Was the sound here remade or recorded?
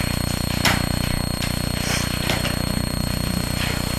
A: remade